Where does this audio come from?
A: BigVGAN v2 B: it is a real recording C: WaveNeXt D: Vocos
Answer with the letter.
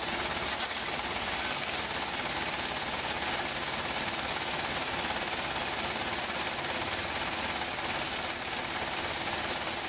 B